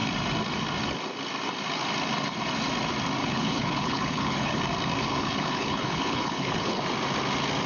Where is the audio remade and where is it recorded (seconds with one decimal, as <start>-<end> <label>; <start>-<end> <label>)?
0.0-3.2 recorded; 3.2-4.6 remade; 4.6-5.1 recorded; 5.1-6.8 remade; 6.8-7.7 recorded